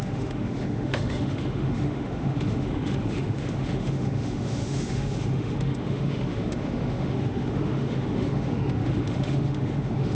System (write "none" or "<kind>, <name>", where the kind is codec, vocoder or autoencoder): autoencoder, DAC-VAE